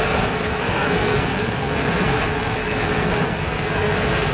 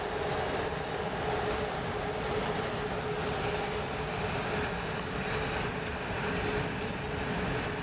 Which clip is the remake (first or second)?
first